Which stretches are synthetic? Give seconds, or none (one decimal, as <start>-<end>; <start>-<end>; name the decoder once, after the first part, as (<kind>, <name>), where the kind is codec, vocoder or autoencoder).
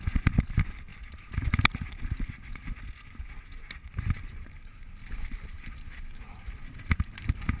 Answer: 4.3-7.6 (vocoder, BigVGAN v2)